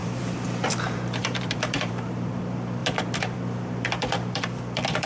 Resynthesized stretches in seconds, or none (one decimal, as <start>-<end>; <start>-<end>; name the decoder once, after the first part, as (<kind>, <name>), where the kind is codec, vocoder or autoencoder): 0.0-2.4 (vocoder, BigVGAN v2); 2.8-3.4; 4.0-5.1